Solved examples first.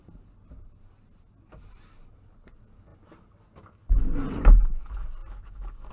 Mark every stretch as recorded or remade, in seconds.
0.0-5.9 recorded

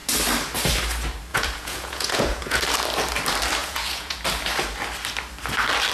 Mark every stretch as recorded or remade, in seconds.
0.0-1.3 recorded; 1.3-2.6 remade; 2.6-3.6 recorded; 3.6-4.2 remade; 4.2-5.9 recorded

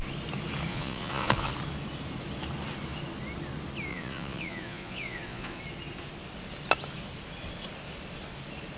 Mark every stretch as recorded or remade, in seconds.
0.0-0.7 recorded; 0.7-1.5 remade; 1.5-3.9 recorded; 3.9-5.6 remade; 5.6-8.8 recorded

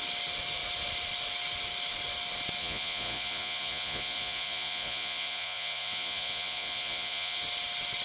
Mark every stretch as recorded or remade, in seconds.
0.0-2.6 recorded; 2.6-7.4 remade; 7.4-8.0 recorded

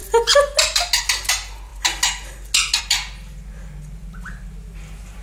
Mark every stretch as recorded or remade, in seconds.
0.0-5.2 recorded